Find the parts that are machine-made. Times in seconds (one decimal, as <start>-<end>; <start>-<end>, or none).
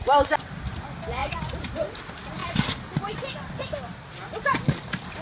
1.2-2.0